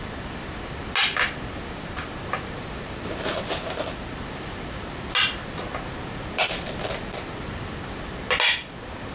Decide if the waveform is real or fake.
real